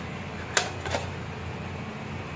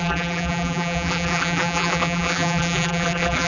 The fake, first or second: second